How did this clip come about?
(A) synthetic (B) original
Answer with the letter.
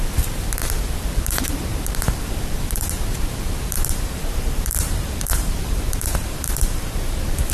A